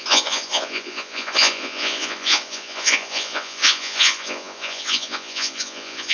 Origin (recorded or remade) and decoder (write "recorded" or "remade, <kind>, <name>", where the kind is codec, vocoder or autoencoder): remade, vocoder, Vocos